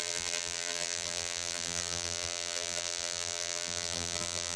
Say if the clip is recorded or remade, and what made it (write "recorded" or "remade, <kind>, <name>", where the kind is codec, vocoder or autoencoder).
remade, vocoder, BigVGAN v2